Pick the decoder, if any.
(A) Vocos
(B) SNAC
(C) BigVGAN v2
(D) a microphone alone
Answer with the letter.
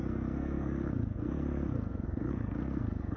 B